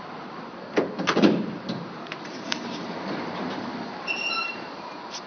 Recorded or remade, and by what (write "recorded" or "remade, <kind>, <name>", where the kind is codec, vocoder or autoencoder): remade, vocoder, BigVGAN v2